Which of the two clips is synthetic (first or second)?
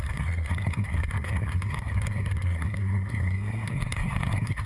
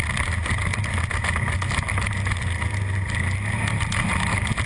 first